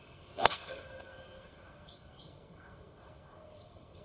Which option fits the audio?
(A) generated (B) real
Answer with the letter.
A